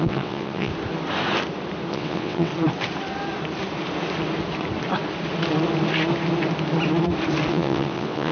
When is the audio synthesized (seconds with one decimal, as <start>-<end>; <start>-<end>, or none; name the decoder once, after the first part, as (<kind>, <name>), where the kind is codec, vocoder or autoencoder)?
0.0-0.7 (vocoder, WaveNeXt); 1.9-2.5; 7.5-8.3